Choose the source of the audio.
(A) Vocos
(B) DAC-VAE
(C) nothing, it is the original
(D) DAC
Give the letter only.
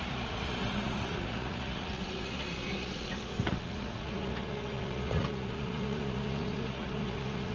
A